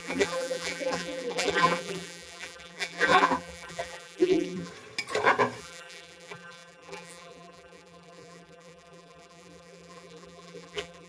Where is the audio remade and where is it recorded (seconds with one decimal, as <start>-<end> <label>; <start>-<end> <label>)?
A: 0.0-4.7 remade; 4.7-5.6 recorded; 5.6-11.1 remade